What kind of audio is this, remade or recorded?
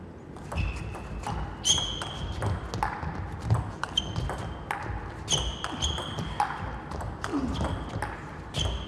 recorded